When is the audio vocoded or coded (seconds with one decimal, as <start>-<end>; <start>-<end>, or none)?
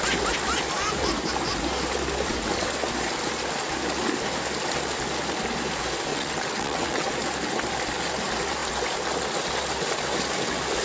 6.1-7.1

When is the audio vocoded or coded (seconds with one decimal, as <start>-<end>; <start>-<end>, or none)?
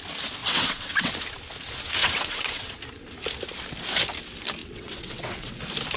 0.4-1.1; 2.0-2.7; 4.6-5.6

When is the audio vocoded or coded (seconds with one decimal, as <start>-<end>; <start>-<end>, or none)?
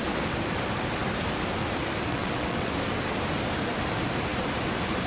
2.1-2.7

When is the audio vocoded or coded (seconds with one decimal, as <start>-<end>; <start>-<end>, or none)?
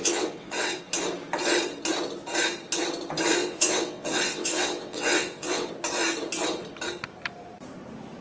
0.0-0.8; 3.4-5.7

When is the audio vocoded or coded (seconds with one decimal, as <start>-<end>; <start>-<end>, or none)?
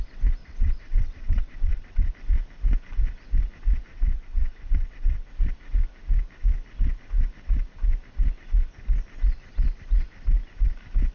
0.4-2.1; 3.9-5.3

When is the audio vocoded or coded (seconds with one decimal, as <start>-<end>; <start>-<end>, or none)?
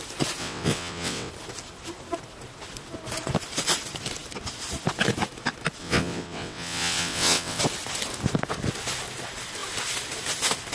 0.4-1.3; 5.8-7.6